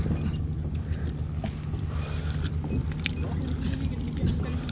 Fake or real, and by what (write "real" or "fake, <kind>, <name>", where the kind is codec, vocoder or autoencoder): real